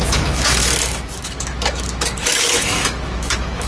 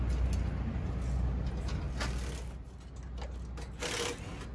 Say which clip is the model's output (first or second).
first